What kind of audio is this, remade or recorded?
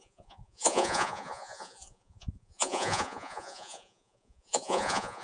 remade